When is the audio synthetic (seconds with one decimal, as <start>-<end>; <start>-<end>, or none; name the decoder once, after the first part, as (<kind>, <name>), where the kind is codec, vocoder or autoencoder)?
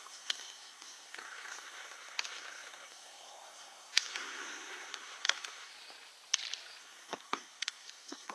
0.0-5.7 (codec, SNAC); 6.8-8.3